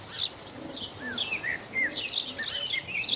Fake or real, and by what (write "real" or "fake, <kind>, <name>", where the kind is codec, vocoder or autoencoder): real